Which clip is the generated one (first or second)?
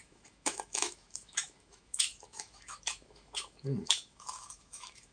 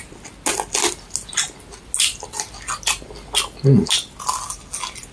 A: first